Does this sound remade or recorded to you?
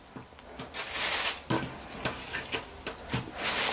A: recorded